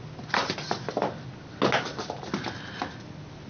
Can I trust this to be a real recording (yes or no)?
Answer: yes